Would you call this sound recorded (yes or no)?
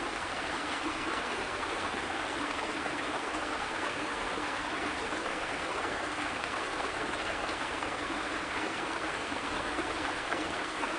no